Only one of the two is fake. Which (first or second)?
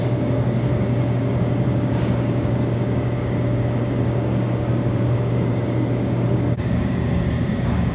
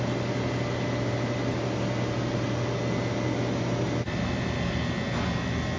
first